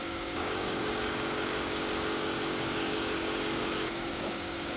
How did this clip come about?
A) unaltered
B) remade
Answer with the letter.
B